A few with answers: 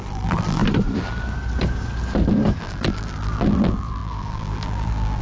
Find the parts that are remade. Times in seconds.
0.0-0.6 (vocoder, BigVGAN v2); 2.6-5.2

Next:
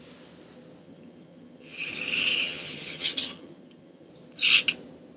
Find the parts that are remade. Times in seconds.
0.8-1.9 (vocoder, HiFi-GAN); 2.3-4.1